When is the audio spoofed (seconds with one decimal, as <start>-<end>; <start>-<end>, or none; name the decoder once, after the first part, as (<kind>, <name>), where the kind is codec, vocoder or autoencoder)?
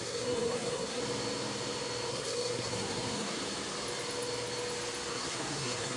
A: 0.0-1.0 (codec, SNAC); 2.1-3.4; 5.1-6.0